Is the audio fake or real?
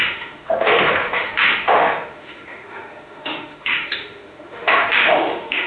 fake